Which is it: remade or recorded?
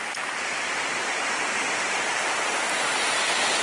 recorded